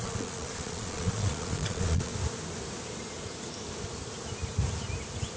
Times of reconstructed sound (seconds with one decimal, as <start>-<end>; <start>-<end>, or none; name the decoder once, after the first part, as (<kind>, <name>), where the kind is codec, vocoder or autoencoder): 0.0-2.1 (vocoder, Vocos)